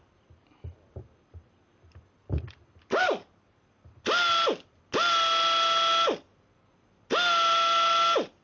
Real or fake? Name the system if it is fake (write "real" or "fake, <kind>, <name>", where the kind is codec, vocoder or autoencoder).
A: real